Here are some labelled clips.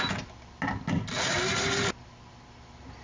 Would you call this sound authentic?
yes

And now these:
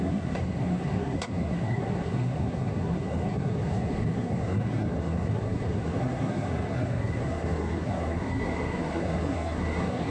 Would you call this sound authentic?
no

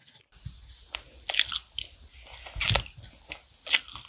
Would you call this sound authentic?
yes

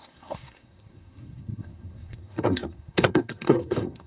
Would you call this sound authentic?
no